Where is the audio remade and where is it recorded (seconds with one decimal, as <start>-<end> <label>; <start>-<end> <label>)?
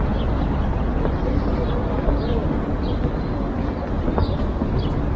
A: 0.0-5.2 recorded